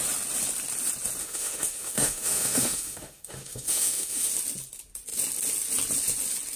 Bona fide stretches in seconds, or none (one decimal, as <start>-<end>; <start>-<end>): 0.0-1.2; 4.3-6.6